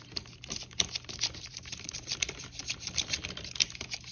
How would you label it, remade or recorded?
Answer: remade